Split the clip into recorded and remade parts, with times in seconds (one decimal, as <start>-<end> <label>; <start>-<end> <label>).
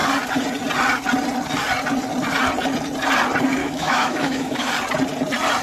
0.0-3.6 recorded; 3.6-4.7 remade; 4.7-5.6 recorded